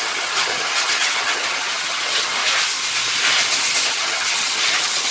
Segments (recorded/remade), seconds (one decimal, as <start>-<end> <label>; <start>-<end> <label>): 0.0-2.4 remade; 2.4-3.9 recorded; 3.9-5.1 remade